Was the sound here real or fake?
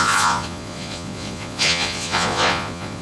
fake